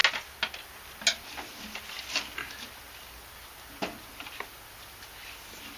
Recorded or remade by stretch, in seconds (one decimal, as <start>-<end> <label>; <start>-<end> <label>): 0.0-5.8 recorded